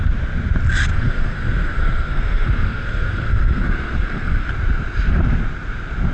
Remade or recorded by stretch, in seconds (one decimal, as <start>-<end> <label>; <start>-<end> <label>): 0.0-0.9 recorded; 0.9-4.5 remade; 4.5-6.1 recorded